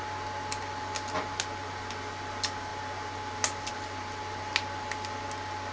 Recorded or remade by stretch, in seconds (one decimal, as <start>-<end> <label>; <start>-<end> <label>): 0.0-5.7 recorded